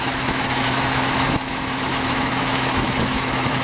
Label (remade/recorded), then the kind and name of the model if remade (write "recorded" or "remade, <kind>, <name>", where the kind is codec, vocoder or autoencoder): remade, autoencoder, DAC-VAE